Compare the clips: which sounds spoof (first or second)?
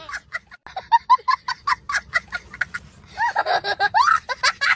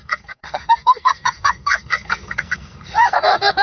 second